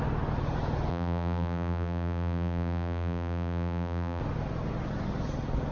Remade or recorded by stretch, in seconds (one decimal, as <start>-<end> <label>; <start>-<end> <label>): 0.0-0.9 recorded; 0.9-4.2 remade; 4.2-5.7 recorded